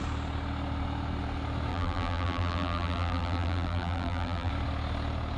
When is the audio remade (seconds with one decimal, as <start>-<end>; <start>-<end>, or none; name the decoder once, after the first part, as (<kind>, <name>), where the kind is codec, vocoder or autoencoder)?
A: 1.7-4.5 (vocoder, BigVGAN v2)